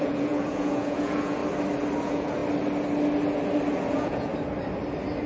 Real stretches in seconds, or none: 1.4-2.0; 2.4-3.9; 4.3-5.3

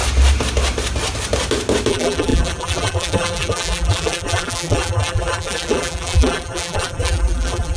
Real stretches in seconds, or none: 0.0-1.9

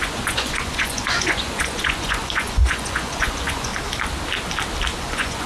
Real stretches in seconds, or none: 3.7-5.0